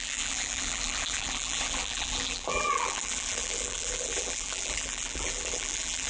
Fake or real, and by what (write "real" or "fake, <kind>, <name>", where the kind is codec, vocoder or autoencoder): fake, vocoder, BigVGAN v2